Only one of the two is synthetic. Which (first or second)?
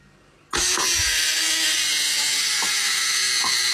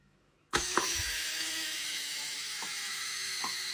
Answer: second